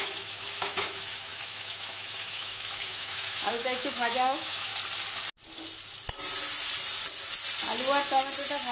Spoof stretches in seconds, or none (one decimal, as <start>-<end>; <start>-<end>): 0.0-4.7